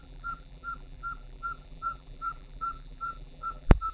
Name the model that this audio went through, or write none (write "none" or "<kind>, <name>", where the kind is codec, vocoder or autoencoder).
vocoder, BigVGAN v2